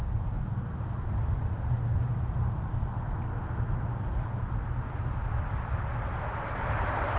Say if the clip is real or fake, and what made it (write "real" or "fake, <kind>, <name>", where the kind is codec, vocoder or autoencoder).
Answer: real